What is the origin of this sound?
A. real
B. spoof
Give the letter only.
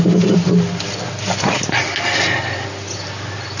A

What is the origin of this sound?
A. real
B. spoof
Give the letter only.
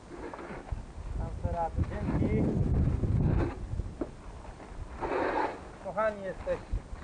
A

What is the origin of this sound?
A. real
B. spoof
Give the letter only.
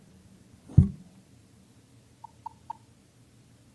B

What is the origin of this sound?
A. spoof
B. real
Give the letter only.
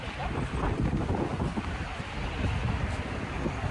B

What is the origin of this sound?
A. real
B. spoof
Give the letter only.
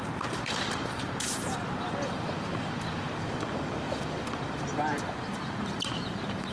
B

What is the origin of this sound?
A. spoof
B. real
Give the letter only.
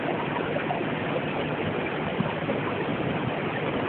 B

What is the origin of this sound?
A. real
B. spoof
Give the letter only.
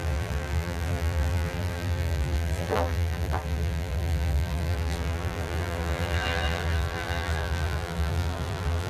B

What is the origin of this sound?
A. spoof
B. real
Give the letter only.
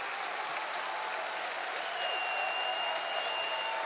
B